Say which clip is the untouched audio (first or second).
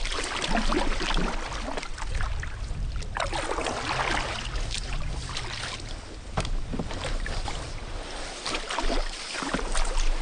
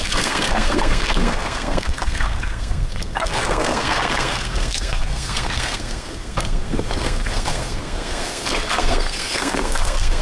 first